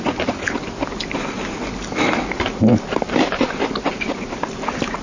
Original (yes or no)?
yes